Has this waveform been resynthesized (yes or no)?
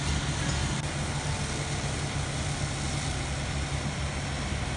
no